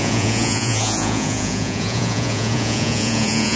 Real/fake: fake